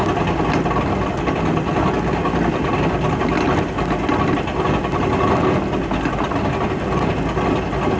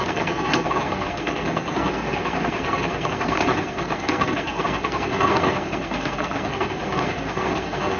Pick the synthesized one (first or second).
second